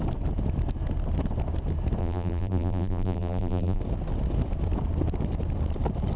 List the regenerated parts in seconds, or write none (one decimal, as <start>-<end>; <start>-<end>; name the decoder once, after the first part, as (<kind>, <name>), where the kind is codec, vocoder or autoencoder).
2.0-3.8 (vocoder, BigVGAN v2)